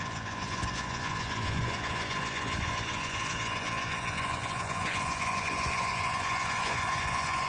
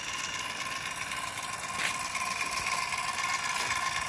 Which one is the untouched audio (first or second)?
second